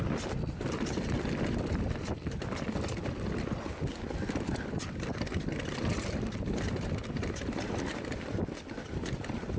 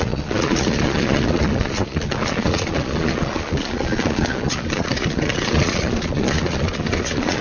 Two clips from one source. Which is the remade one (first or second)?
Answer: second